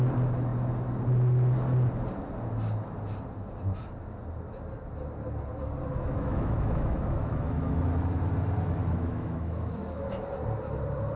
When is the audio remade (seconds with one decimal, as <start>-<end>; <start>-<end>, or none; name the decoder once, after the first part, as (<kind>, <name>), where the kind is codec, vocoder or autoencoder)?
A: 5.9-7.7 (autoencoder, DAC-VAE); 8.8-10.1